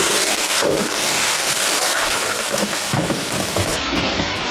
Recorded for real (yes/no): no